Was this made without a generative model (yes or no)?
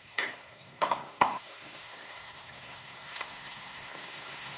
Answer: no